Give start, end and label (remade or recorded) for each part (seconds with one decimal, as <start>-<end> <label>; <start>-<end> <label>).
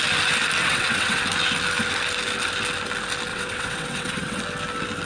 0.0-0.6 recorded; 0.6-1.2 remade; 1.2-3.3 recorded; 3.3-4.4 remade; 4.4-5.1 recorded